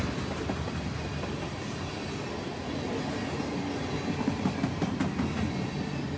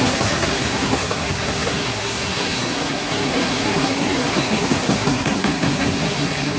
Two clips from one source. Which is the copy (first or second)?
second